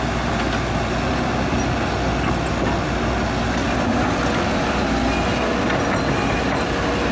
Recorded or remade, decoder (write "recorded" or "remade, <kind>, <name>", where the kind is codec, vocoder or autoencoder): recorded